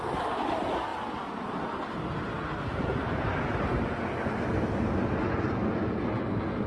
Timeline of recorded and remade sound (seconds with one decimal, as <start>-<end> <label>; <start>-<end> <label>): 0.0-6.7 recorded